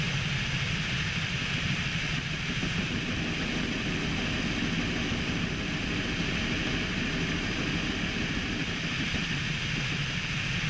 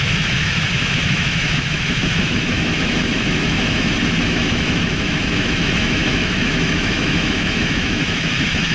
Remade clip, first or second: second